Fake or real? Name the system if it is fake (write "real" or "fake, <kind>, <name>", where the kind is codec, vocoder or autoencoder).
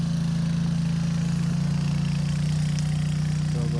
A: real